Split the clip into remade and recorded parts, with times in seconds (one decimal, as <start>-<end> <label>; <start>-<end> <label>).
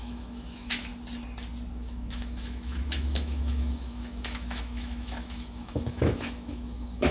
0.0-0.9 remade; 0.9-1.7 recorded; 1.7-7.1 remade